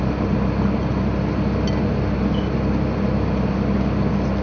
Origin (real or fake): real